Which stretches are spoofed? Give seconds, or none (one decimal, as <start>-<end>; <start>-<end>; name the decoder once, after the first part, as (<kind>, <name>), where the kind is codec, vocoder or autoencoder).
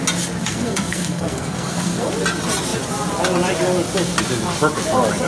0.4-2.1 (codec, SNAC)